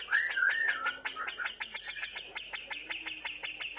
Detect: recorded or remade recorded